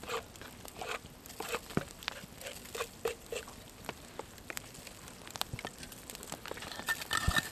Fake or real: real